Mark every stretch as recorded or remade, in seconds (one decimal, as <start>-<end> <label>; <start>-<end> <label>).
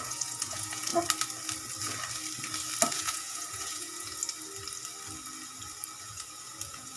0.0-0.9 remade; 0.9-2.9 recorded; 2.9-4.2 remade; 4.2-6.0 recorded; 6.0-7.0 remade